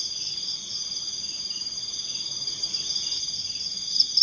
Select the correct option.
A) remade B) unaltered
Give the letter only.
B